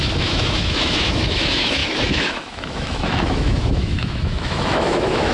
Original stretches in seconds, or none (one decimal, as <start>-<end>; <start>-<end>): none

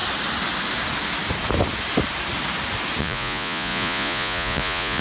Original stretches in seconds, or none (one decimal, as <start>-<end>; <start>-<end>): 0.0-3.0

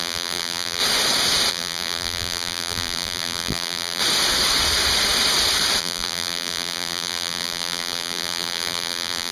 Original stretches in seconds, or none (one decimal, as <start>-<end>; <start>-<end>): 0.8-1.5; 4.0-5.8

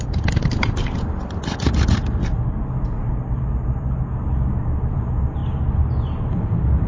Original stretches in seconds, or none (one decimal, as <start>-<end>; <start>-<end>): 2.2-4.6; 5.4-6.2

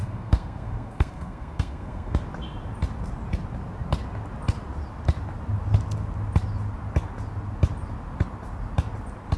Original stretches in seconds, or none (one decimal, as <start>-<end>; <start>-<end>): 2.2-9.4

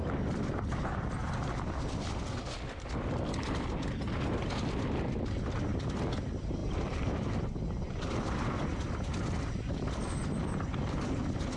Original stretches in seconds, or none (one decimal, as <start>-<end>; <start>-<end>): 0.0-1.2; 3.1-6.6; 8.1-8.7; 10.0-11.6